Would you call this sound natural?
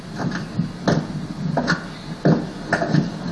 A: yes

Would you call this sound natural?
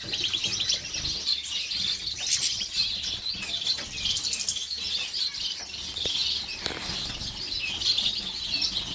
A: yes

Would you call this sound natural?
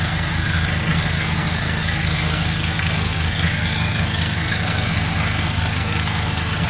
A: no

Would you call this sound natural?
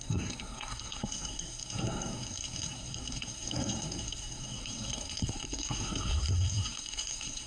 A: no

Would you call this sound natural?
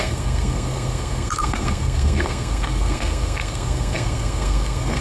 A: no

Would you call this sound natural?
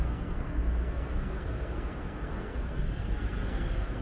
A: no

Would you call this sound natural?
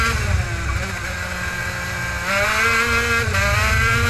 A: yes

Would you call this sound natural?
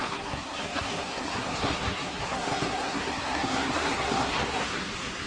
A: no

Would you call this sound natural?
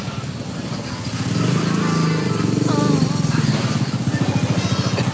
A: yes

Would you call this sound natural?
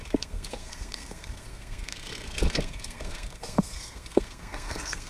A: no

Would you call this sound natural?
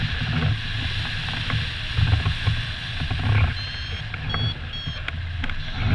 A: yes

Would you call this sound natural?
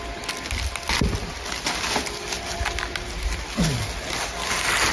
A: yes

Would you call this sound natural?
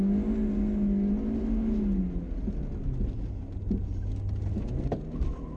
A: yes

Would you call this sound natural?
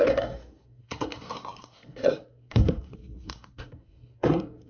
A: no